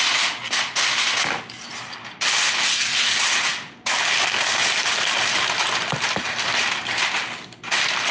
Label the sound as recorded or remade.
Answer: recorded